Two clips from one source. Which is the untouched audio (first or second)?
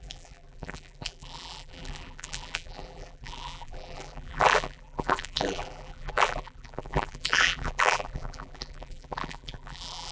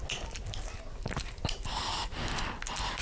second